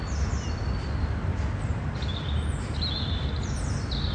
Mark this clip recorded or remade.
recorded